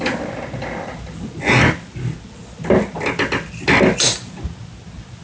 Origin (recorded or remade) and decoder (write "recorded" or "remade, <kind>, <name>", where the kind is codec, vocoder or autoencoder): recorded